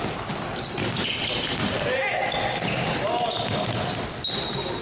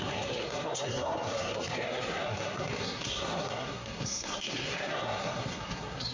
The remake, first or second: second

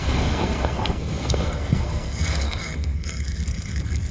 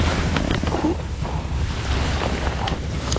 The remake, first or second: first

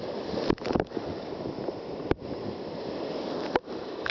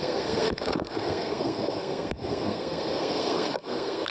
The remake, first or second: second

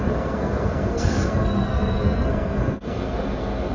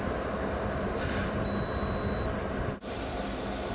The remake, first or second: first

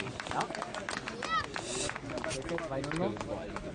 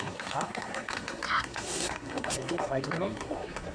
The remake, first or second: second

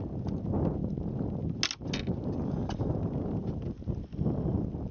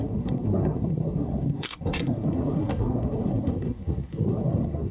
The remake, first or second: second